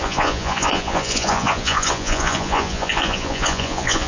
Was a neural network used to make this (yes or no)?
yes